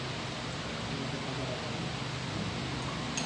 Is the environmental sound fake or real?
real